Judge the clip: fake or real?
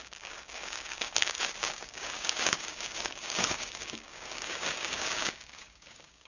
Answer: fake